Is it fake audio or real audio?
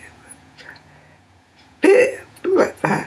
fake